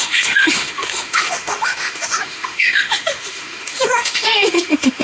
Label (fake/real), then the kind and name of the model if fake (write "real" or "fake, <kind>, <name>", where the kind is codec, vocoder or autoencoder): fake, autoencoder, DAC-VAE